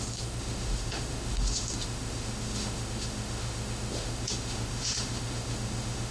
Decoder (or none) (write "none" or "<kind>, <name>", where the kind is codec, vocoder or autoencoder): autoencoder, DAC-VAE